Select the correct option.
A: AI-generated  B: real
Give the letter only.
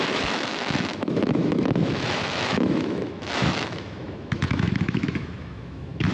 A